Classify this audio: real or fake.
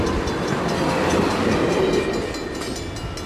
real